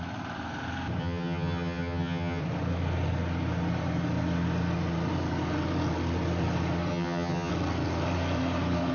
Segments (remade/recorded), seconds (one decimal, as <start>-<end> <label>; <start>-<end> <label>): 0.0-1.0 recorded; 1.0-2.4 remade; 2.4-6.9 recorded; 6.9-7.5 remade; 7.5-8.9 recorded